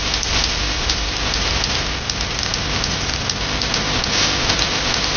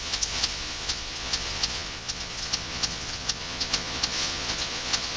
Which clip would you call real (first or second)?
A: first